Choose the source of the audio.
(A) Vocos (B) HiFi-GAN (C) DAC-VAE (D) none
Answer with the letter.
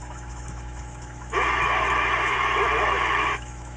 C